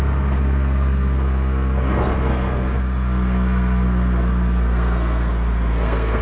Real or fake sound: fake